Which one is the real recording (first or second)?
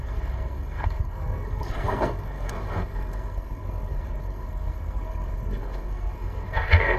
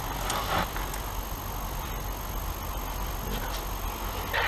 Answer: second